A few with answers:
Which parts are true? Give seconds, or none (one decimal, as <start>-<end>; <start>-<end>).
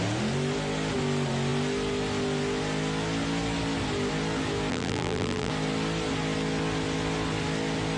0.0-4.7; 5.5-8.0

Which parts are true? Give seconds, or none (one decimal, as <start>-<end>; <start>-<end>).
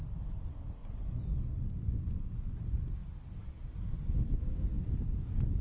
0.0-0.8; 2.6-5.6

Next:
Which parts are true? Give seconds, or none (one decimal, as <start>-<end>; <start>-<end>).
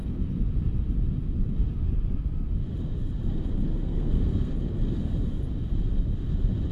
0.0-3.7; 4.5-6.7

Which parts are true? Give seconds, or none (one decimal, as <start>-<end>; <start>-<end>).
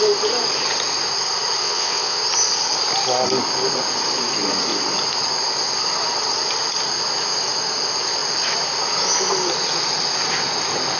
0.0-1.6; 2.2-11.0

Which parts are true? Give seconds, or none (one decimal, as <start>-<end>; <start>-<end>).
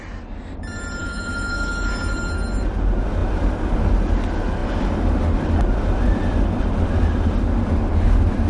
0.0-1.0; 1.9-8.5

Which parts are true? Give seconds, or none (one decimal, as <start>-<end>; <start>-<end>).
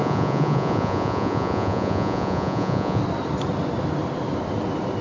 3.0-5.0